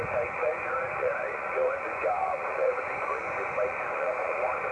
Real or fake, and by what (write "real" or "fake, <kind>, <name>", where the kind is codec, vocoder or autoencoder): fake, vocoder, Vocos